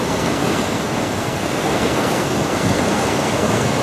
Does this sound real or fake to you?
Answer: fake